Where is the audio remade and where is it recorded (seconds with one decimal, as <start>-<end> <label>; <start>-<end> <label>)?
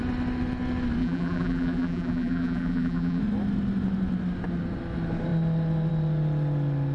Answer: 0.0-1.0 recorded; 1.0-3.2 remade; 3.2-6.9 recorded